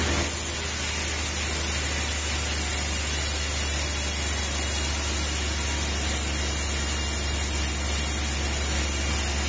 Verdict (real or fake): real